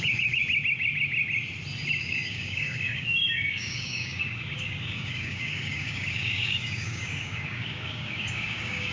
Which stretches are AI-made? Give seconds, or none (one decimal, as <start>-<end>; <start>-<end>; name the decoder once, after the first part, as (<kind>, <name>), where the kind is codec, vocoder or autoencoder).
0.0-0.4 (codec, DAC); 2.0-8.9